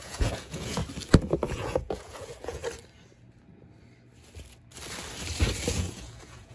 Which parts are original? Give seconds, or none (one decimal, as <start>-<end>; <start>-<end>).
0.8-1.5; 2.6-5.7